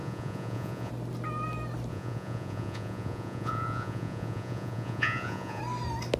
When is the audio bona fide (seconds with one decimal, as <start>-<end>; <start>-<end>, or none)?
0.9-1.9; 5.6-6.2